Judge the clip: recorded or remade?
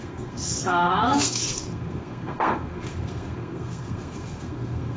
remade